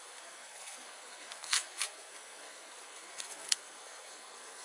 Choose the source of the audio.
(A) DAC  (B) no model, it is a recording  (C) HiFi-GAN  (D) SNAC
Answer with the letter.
D